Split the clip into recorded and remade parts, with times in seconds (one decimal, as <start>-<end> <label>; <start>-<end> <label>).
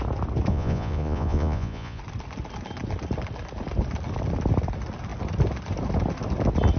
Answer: 0.0-0.5 recorded; 0.5-2.0 remade; 2.0-6.8 recorded